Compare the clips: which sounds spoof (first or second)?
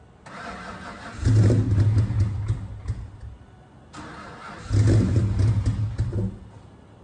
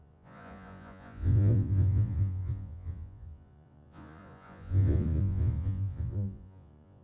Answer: second